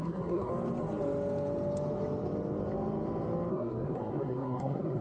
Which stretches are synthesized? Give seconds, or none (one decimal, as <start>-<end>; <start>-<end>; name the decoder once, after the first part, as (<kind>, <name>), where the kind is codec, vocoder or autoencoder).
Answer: 0.0-0.5 (codec, SNAC); 3.5-5.0